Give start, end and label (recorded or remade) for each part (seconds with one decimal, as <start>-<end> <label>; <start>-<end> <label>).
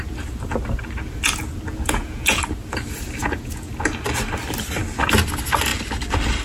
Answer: 0.0-1.7 recorded; 1.7-2.4 remade; 2.4-3.2 recorded; 3.2-3.7 remade; 3.7-6.4 recorded